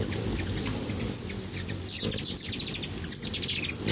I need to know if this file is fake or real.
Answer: real